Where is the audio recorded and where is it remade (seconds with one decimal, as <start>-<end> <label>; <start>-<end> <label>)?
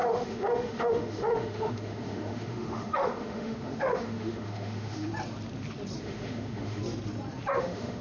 0.0-5.1 remade; 5.1-6.0 recorded; 6.0-6.8 remade; 6.8-7.6 recorded; 7.6-8.0 remade